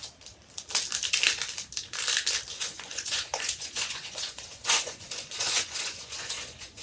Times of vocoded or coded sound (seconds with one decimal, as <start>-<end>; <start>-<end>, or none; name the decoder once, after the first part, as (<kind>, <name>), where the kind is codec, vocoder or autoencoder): 2.5-6.8 (vocoder, Vocos)